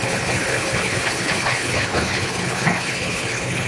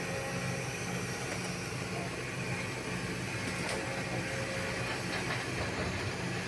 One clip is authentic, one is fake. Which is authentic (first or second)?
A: second